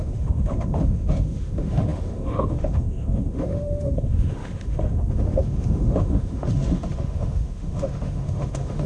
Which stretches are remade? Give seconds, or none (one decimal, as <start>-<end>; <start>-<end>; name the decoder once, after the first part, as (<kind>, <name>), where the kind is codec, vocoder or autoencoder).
0.0-8.9 (autoencoder, DAC-VAE)